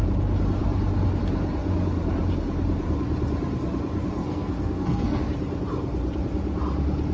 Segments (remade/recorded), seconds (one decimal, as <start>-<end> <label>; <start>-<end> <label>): 0.0-4.2 recorded; 4.2-5.2 remade; 5.2-7.1 recorded

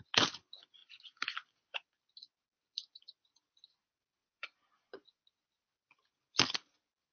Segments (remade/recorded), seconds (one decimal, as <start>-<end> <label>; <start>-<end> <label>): 0.0-4.2 recorded; 4.2-5.2 remade; 5.2-7.1 recorded